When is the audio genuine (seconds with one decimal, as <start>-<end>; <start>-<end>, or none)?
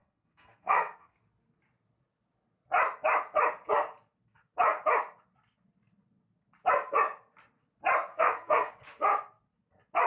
1.2-8.1; 8.7-10.1